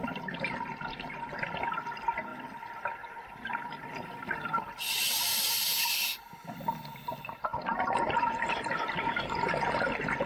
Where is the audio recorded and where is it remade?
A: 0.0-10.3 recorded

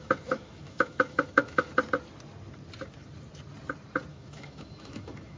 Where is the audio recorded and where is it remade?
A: 0.0-1.7 remade; 1.7-4.1 recorded; 4.1-5.4 remade

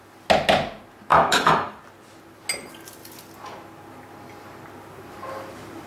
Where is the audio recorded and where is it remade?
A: 0.0-1.1 recorded; 1.1-1.8 remade; 1.8-5.9 recorded

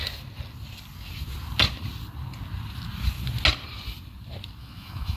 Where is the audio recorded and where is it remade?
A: 0.0-4.6 recorded; 4.6-5.2 remade